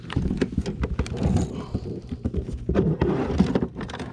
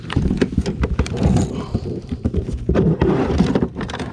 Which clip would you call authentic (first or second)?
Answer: first